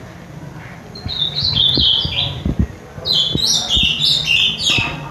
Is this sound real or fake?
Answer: real